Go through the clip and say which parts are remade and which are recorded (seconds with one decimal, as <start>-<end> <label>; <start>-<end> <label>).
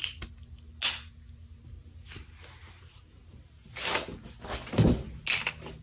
0.0-5.8 recorded